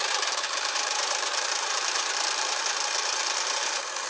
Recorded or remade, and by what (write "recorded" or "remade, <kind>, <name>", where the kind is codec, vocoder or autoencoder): remade, vocoder, BigVGAN v2